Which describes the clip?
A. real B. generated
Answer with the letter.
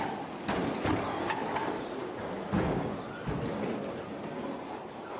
A